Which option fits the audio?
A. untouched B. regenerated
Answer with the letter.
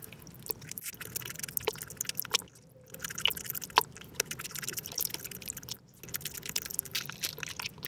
A